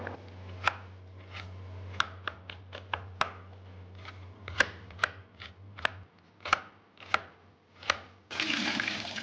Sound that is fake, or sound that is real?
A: real